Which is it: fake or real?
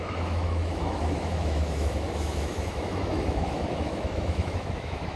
fake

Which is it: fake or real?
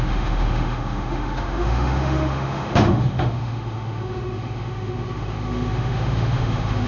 fake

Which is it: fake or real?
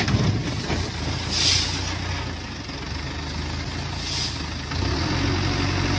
real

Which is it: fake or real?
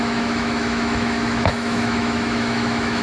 fake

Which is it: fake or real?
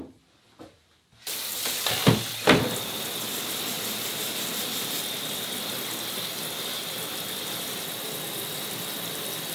real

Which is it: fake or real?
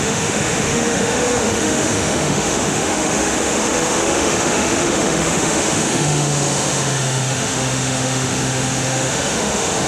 fake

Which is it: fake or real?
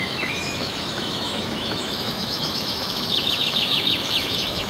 fake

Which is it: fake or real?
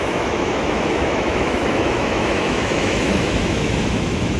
fake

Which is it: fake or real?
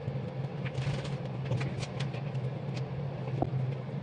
real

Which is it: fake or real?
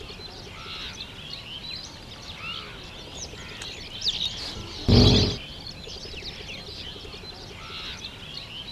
real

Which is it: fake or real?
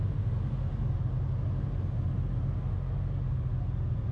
real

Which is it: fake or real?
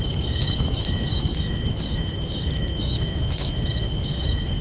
fake